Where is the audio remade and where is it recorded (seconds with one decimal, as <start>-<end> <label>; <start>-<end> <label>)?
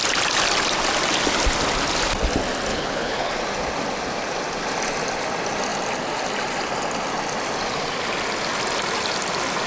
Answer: 0.0-2.7 recorded; 2.7-3.3 remade; 3.3-9.7 recorded